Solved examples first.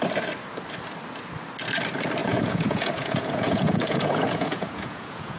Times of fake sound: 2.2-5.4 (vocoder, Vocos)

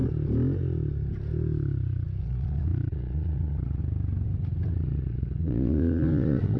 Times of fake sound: 2.2-3.8 (vocoder, Vocos); 4.7-6.6

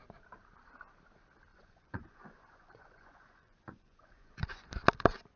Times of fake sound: 1.5-4.7 (vocoder, Vocos)

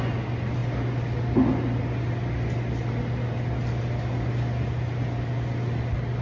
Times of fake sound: none